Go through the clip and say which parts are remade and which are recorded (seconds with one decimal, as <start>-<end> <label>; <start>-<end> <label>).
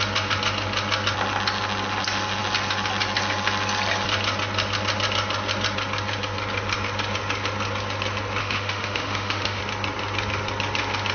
0.0-8.4 recorded; 8.4-9.6 remade; 9.6-11.1 recorded